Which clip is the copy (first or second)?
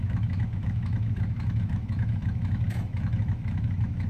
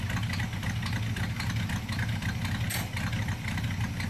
first